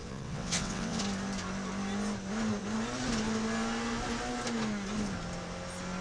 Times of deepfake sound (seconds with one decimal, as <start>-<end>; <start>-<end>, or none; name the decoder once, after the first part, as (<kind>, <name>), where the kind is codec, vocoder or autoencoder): 0.0-1.0 (vocoder, WaveNeXt)